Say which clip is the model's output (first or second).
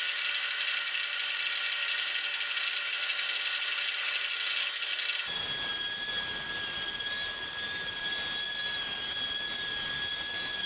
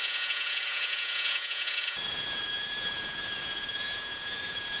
second